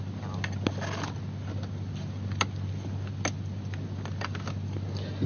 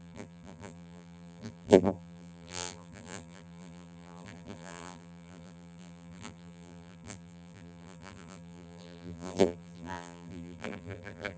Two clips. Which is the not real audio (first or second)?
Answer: second